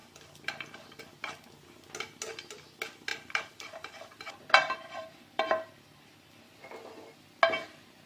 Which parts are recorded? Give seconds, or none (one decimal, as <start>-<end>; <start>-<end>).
1.0-3.1; 6.5-8.1